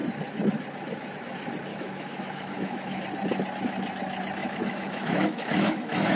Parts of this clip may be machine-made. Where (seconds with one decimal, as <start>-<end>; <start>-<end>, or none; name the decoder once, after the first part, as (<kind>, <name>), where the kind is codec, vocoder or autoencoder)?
1.7-3.0 (autoencoder, DAC-VAE); 4.4-6.2